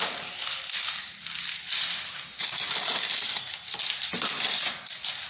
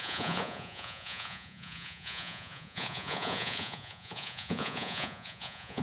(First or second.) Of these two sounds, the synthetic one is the second